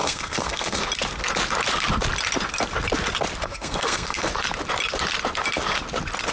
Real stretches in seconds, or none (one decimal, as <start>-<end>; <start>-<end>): 0.8-3.4; 4.3-6.3